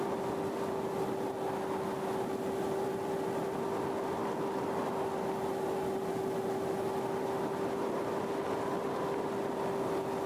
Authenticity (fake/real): real